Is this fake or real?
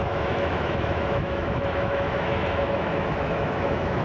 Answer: fake